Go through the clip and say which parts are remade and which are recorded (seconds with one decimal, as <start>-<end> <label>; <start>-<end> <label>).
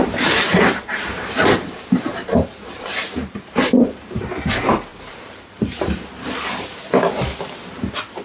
0.0-4.2 remade; 4.2-4.9 recorded; 4.9-6.0 remade; 6.0-8.2 recorded